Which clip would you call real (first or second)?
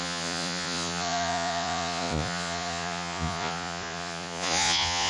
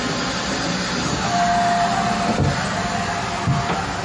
second